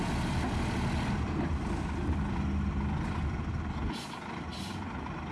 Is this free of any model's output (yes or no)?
yes